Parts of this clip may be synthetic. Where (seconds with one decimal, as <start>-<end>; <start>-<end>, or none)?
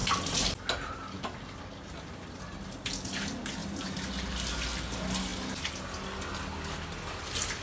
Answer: none